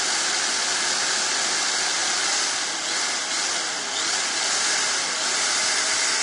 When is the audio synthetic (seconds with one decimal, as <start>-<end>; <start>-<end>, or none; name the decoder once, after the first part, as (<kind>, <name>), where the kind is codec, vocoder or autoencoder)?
none